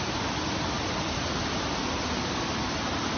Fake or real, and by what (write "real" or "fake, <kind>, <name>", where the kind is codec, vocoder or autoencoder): real